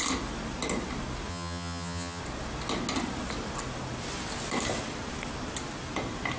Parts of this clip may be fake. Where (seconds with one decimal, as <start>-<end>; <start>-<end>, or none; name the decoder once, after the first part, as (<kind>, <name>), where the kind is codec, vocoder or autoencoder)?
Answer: 1.3-2.2 (vocoder, HiFi-GAN)